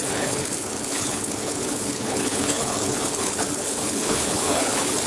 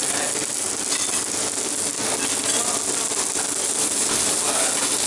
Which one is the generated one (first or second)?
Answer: first